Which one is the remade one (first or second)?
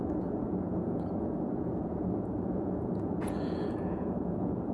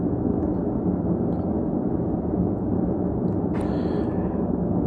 first